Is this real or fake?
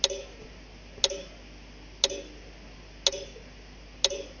real